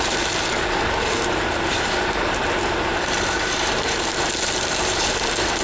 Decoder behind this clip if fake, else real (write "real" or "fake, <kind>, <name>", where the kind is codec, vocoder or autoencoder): fake, vocoder, BigVGAN v2